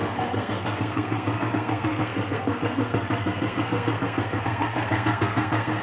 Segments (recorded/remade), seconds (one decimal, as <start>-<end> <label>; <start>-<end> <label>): 0.0-5.8 remade